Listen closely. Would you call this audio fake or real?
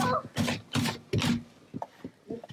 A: real